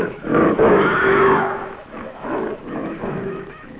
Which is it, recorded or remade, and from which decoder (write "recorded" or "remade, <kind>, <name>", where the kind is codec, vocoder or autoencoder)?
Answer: remade, autoencoder, DAC-VAE